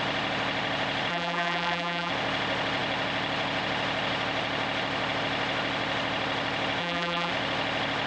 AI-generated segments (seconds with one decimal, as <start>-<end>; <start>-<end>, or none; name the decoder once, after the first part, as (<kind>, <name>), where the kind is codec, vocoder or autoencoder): 1.1-2.1 (vocoder, BigVGAN v2); 6.8-7.3